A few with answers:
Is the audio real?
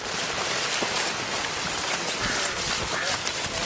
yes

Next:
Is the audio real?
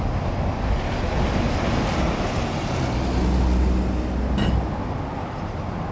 yes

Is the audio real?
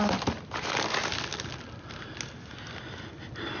yes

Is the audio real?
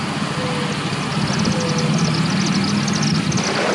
yes